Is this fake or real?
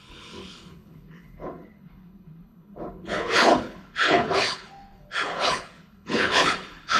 fake